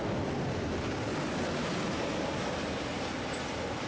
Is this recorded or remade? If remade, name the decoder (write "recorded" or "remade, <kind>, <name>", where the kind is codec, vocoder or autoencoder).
remade, vocoder, BigVGAN v2